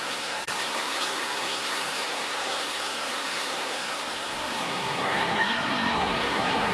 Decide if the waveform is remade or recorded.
remade